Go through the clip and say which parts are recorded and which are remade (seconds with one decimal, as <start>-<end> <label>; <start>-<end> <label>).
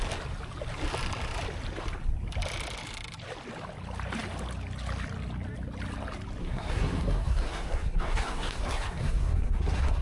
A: 0.0-6.4 recorded; 6.4-10.0 remade